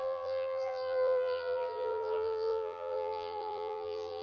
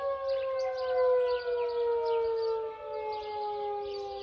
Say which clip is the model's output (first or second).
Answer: first